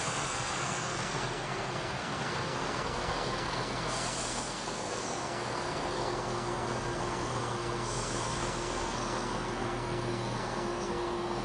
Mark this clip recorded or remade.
remade